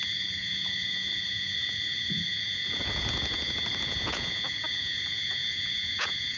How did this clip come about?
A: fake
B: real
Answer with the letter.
A